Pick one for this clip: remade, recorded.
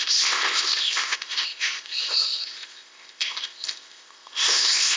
remade